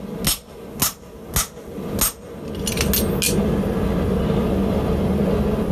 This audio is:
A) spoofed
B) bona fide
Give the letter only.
B